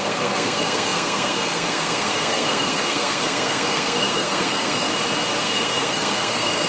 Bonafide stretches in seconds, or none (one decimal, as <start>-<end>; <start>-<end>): 4.9-5.4